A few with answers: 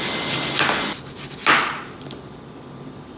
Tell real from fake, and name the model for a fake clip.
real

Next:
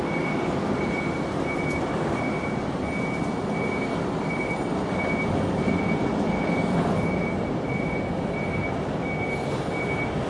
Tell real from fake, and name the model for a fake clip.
real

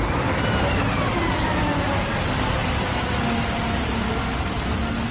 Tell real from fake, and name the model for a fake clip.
real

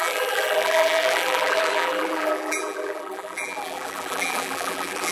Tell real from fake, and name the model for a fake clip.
fake, vocoder, BigVGAN v2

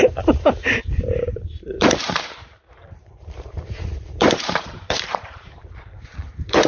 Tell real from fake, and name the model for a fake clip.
fake, vocoder, BigVGAN v2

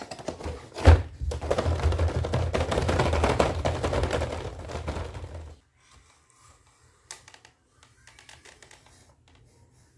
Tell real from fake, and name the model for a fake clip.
real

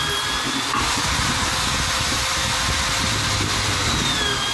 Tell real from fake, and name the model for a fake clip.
fake, vocoder, BigVGAN v2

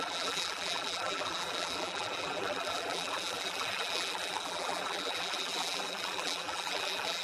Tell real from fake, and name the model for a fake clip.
fake, vocoder, BigVGAN v2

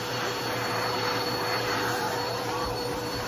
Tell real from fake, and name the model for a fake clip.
fake, vocoder, BigVGAN v2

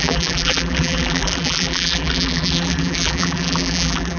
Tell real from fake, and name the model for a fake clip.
fake, vocoder, BigVGAN v2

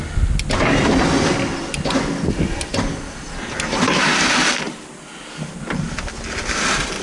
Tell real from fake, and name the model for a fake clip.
real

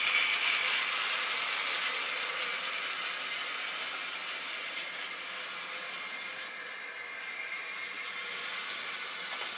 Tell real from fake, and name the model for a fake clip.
real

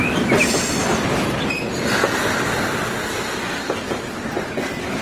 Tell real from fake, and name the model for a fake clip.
real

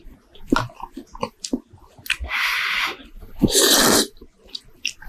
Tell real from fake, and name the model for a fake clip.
real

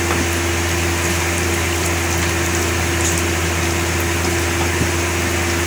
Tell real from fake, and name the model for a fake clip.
real